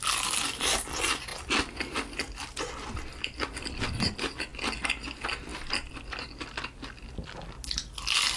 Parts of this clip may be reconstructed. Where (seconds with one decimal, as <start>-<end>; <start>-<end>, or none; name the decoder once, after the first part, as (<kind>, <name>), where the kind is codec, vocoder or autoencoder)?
none